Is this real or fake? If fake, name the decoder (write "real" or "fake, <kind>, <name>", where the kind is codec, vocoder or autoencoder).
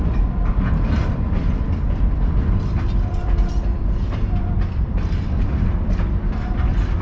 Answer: fake, vocoder, BigVGAN v2